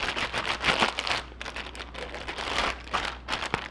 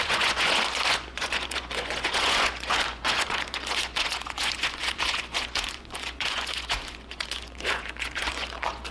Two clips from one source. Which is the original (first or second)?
first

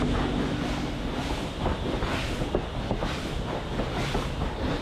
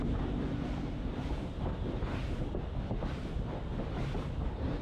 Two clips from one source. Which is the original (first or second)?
first